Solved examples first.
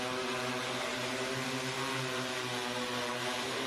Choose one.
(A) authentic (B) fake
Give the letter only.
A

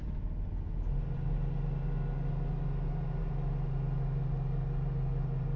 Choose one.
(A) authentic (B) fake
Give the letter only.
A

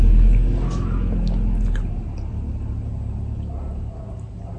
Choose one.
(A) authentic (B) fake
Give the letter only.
A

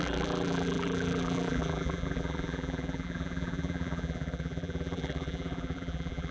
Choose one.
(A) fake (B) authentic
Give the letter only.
A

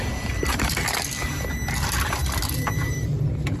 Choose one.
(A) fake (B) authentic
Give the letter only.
A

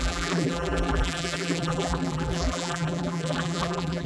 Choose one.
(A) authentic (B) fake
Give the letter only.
B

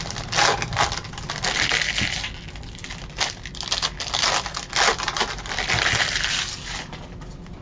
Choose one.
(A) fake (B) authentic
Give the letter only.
B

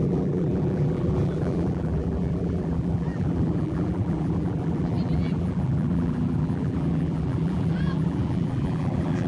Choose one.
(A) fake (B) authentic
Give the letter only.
A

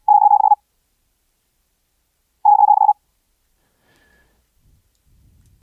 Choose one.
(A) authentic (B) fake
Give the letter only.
B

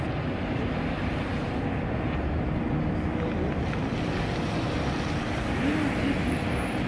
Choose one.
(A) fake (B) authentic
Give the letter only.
B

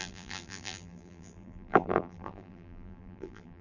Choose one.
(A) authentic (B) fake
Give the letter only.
B